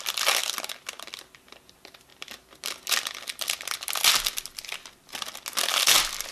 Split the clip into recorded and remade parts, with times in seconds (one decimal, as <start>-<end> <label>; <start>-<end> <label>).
0.0-6.3 recorded